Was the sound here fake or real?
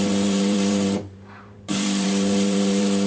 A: fake